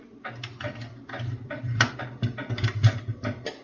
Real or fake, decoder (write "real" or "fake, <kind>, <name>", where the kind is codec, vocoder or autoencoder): real